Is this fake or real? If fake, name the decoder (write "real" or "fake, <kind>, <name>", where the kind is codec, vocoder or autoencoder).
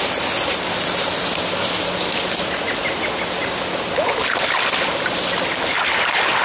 real